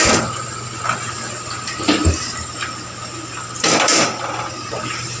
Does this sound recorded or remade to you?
remade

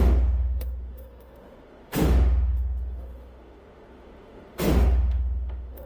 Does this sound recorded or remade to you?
remade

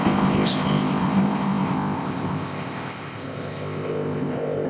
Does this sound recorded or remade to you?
remade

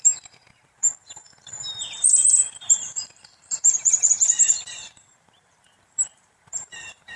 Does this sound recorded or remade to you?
remade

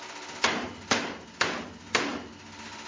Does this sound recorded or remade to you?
recorded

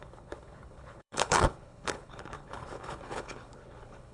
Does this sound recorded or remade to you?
remade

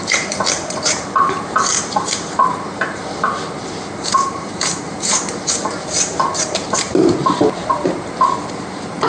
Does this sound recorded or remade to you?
remade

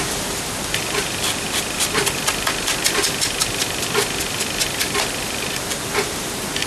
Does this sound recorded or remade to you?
recorded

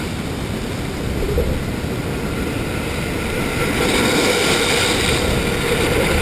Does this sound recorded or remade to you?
recorded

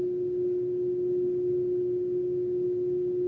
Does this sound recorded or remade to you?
recorded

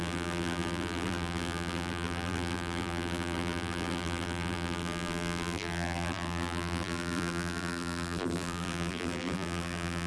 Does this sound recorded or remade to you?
remade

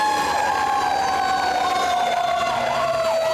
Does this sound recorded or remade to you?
recorded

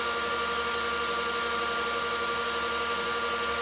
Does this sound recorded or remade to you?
recorded